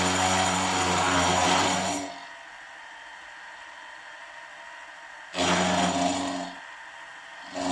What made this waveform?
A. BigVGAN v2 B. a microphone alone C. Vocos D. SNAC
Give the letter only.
B